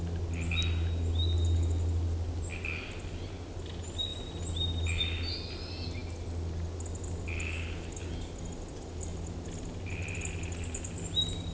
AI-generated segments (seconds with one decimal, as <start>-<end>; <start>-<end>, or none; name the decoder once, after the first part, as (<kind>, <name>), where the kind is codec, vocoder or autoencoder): none